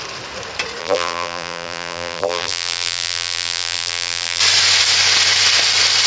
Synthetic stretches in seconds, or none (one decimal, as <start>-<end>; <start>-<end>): 0.8-4.4